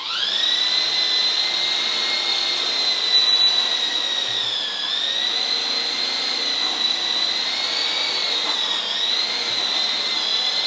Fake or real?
real